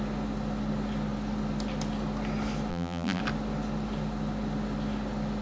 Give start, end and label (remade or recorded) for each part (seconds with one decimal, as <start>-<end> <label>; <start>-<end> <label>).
0.0-2.7 recorded; 2.7-3.2 remade; 3.2-5.4 recorded